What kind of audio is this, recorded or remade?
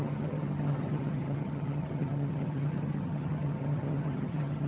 remade